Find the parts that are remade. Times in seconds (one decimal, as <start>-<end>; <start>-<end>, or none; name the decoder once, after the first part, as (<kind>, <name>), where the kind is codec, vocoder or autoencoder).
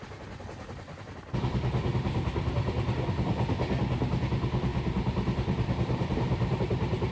4.7-6.6 (vocoder, BigVGAN v2)